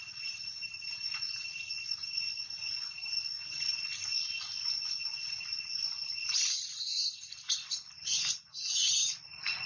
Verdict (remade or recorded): recorded